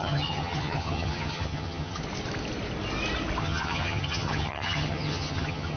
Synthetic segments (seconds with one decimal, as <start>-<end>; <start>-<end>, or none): 0.0-2.0; 3.4-5.8